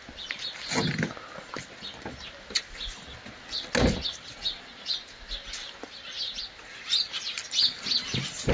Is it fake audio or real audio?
real